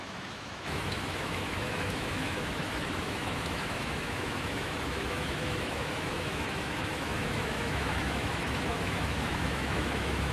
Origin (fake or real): fake